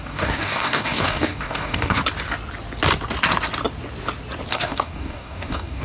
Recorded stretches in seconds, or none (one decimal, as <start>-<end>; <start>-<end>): 2.0-4.5